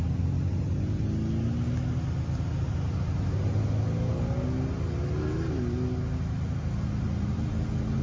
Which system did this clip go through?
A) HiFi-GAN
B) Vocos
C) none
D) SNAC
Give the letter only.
C